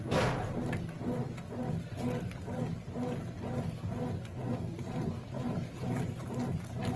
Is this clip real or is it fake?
real